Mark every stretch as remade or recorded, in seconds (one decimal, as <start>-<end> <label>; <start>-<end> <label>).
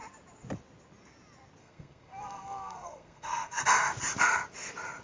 0.0-1.6 recorded; 1.6-3.6 remade; 3.6-5.0 recorded